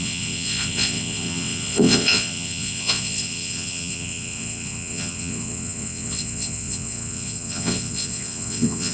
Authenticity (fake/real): fake